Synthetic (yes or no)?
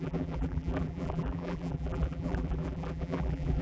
yes